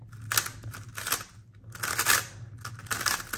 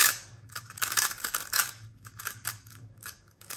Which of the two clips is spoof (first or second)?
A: second